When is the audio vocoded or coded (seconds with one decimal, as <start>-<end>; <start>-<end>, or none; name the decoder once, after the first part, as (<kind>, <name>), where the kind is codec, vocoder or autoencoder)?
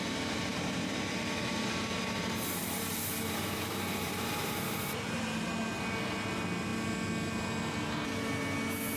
0.5-5.5 (vocoder, BigVGAN v2)